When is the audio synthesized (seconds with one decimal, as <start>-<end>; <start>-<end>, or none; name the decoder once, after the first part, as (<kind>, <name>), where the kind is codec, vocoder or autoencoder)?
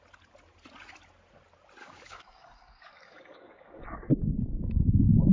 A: 1.8-5.3 (codec, DAC)